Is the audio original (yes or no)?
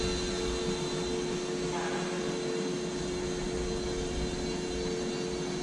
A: yes